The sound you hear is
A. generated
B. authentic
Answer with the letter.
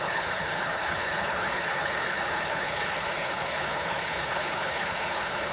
A